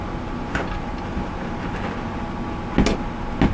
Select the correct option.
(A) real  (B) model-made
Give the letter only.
A